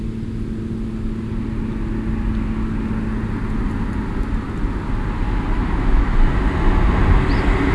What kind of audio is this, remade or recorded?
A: recorded